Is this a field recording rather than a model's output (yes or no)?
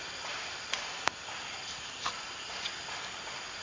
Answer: yes